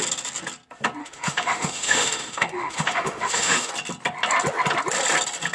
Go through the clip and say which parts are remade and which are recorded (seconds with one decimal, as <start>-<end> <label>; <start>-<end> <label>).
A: 0.0-1.0 recorded; 1.0-3.7 remade; 3.7-5.5 recorded